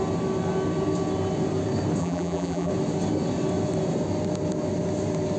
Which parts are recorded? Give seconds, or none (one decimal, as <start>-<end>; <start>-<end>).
0.0-2.0; 2.7-5.4